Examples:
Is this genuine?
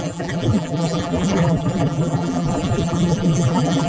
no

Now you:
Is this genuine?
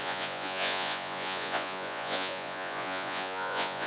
no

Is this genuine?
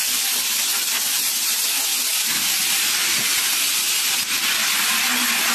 yes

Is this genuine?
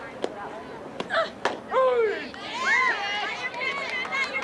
yes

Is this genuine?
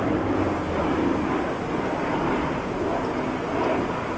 yes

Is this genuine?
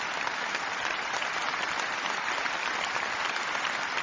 yes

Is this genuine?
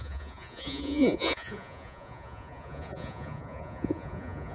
no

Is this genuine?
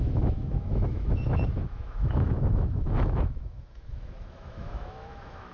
no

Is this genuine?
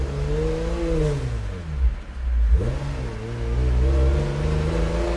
yes